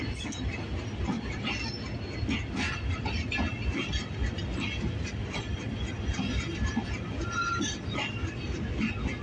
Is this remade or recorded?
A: recorded